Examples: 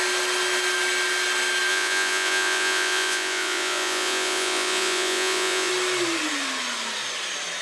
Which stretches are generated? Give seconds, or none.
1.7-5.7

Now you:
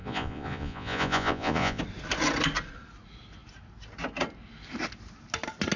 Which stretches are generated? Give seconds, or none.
0.0-1.8

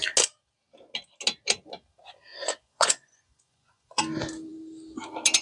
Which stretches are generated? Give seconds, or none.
2.3-4.0

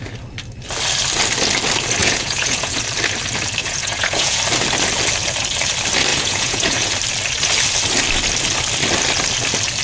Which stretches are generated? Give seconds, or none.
2.0-2.8; 3.6-4.4; 6.1-6.9

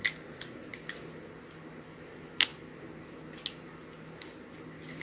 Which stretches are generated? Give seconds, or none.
none

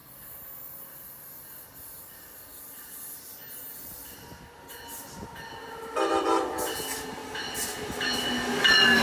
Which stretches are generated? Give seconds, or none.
none

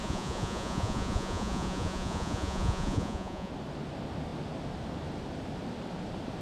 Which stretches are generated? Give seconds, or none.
0.0-3.5